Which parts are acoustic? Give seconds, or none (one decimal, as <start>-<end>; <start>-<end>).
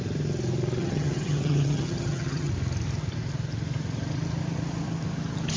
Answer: 0.0-0.8; 2.5-5.6